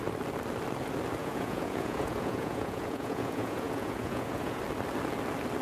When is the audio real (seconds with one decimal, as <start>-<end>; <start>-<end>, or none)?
0.0-1.2; 4.6-5.6